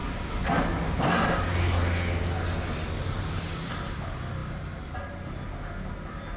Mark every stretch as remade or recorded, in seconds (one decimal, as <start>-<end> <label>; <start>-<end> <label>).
0.0-6.4 recorded